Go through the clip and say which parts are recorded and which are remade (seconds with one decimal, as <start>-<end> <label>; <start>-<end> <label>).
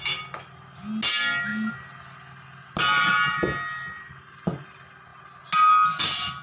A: 0.0-6.4 recorded